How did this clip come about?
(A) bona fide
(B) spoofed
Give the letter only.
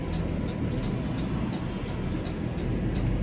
A